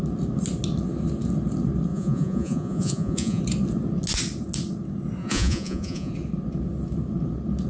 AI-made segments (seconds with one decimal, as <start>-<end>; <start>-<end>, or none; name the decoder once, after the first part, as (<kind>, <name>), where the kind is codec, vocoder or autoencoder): 1.9-3.4 (vocoder, Vocos); 5.2-6.1